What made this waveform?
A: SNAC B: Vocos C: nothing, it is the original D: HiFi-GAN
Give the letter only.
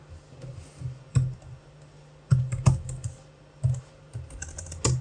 C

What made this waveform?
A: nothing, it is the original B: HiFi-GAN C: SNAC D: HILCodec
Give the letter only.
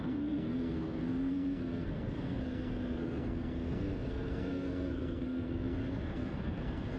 C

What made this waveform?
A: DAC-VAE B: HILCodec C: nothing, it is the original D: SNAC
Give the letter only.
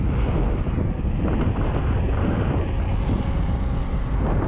C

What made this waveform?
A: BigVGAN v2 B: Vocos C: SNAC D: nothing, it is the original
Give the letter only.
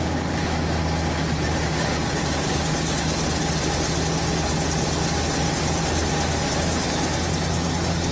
D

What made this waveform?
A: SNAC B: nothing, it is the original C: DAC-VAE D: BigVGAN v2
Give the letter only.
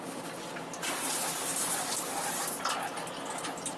B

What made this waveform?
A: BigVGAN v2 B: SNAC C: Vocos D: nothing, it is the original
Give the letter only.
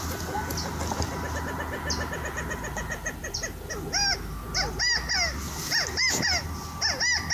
D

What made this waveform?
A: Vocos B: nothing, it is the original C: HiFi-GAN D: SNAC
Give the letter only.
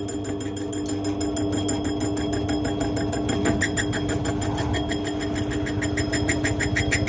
B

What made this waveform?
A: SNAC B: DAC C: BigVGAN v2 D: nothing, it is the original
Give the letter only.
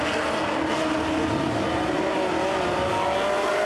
D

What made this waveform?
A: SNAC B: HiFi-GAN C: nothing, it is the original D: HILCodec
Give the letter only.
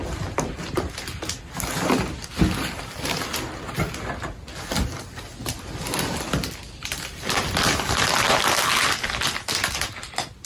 C